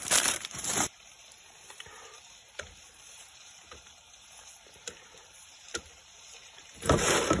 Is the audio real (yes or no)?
no